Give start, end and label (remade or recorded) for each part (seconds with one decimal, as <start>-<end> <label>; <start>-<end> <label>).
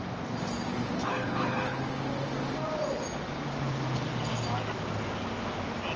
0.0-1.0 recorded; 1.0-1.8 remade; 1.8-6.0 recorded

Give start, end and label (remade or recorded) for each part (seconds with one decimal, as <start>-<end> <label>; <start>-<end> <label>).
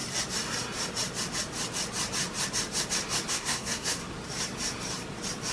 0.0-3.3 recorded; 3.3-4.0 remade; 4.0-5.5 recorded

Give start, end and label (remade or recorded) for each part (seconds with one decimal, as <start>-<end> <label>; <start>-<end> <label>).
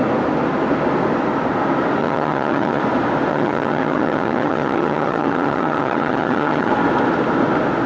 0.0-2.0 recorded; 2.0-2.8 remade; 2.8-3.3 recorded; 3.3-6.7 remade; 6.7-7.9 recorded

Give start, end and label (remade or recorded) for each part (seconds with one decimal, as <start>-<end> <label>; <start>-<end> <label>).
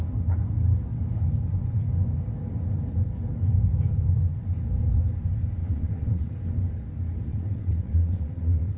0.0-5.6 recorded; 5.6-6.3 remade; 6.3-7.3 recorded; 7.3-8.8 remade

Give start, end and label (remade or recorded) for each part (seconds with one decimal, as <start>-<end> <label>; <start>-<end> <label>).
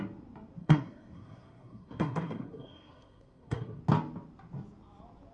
0.0-0.6 recorded; 0.6-3.8 remade; 3.8-5.3 recorded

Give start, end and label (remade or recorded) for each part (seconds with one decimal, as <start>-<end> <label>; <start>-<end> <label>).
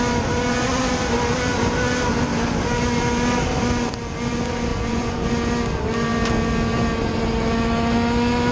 0.0-4.7 recorded; 4.7-5.3 remade; 5.3-8.5 recorded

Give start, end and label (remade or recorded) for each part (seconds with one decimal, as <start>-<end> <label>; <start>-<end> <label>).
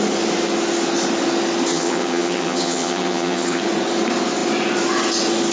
0.0-1.7 recorded; 1.7-3.6 remade; 3.6-5.5 recorded